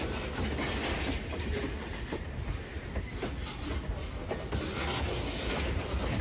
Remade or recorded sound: recorded